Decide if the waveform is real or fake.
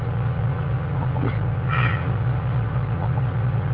fake